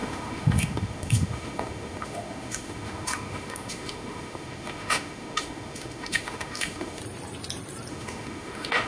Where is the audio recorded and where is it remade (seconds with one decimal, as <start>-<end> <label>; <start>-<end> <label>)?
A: 0.0-7.0 remade; 7.0-7.9 recorded; 7.9-8.9 remade